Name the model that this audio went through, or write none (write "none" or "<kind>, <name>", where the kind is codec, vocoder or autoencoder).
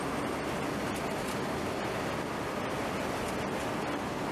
none